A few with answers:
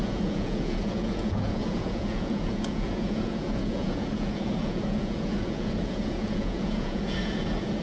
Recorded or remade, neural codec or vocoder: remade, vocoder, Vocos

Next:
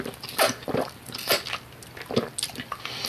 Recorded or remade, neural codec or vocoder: recorded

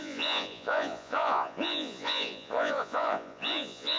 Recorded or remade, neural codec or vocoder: remade, vocoder, Vocos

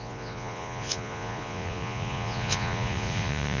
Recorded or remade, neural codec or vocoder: remade, vocoder, Vocos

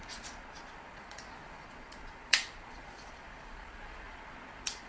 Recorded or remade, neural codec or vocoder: remade, vocoder, Vocos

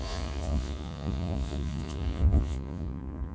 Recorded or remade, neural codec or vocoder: remade, vocoder, Vocos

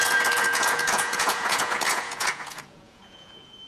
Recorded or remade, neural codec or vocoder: remade, vocoder, Vocos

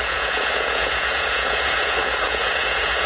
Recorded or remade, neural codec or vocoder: remade, vocoder, Vocos